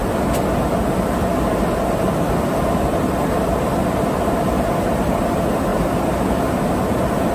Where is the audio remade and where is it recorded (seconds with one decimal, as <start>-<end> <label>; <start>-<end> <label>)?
0.0-7.3 recorded

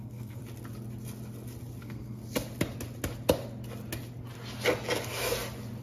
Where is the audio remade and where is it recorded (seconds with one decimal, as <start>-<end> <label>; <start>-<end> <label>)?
0.0-0.4 remade; 0.4-1.8 recorded; 1.8-2.2 remade; 2.2-5.8 recorded

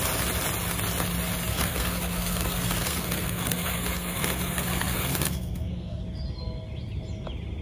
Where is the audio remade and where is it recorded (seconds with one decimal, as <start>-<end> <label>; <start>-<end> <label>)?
0.0-1.5 recorded; 1.5-6.0 remade; 6.0-7.6 recorded

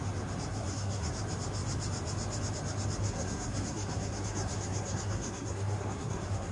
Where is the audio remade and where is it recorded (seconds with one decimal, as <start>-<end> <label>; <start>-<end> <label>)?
0.0-0.5 recorded; 0.5-1.1 remade; 1.1-3.0 recorded; 3.0-6.5 remade

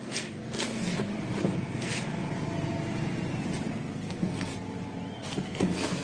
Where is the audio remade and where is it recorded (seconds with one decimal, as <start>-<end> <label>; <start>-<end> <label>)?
0.0-1.1 remade; 1.1-1.7 recorded; 1.7-2.2 remade; 2.2-3.7 recorded; 3.7-4.5 remade; 4.5-5.2 recorded; 5.2-6.0 remade

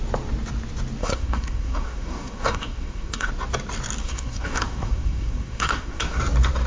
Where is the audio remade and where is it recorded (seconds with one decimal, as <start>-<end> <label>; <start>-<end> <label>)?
0.0-1.0 recorded; 1.0-3.3 remade; 3.3-4.0 recorded; 4.0-6.2 remade; 6.2-6.7 recorded

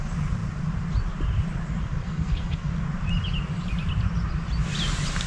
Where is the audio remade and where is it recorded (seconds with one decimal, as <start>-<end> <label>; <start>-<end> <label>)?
0.0-1.8 recorded; 1.8-2.7 remade; 2.7-5.3 recorded

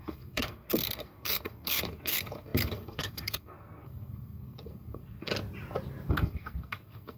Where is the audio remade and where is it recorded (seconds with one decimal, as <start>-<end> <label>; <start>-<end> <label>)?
0.0-5.3 remade; 5.3-6.1 recorded; 6.1-7.2 remade